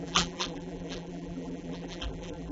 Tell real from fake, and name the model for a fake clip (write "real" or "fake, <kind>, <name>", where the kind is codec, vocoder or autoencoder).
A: fake, vocoder, BigVGAN v2